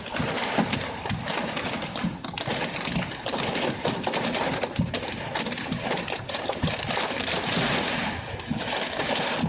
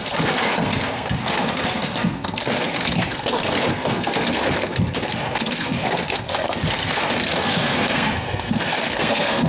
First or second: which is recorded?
first